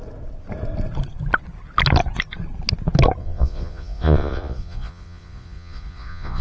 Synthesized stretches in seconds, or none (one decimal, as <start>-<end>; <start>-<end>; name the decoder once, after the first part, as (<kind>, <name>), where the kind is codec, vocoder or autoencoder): 3.2-6.4 (vocoder, Vocos)